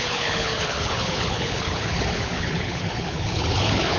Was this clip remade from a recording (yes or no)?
yes